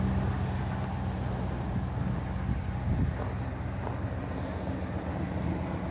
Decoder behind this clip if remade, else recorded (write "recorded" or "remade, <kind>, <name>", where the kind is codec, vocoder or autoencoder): recorded